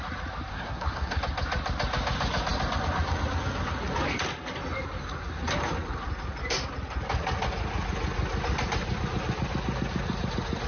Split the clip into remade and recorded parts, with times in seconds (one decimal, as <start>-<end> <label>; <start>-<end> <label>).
0.0-0.5 recorded; 0.5-1.2 remade; 1.2-10.7 recorded